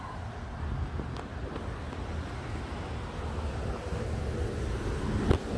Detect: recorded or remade recorded